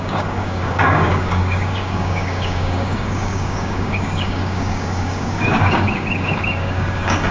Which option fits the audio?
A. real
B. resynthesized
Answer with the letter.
B